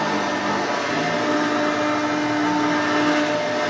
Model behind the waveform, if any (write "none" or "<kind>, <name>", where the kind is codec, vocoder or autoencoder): none